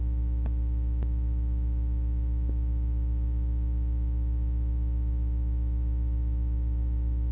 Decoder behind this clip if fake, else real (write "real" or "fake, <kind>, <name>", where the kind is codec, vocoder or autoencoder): real